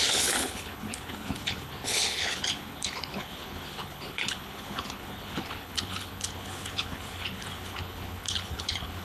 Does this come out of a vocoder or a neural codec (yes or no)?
yes